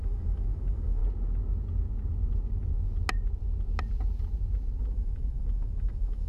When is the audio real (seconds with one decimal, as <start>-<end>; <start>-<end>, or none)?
1.0-4.8